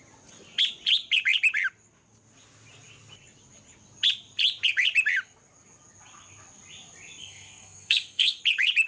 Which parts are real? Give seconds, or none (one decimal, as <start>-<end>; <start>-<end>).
0.0-7.2; 8.4-8.9